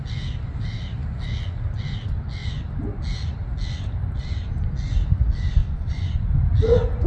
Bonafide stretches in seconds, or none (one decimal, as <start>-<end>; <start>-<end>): 0.0-5.6; 6.3-7.1